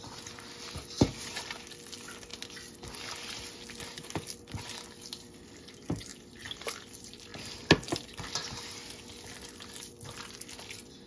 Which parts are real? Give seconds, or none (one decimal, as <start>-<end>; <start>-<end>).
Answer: 0.0-11.1